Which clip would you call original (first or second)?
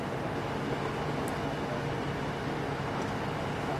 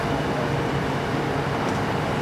first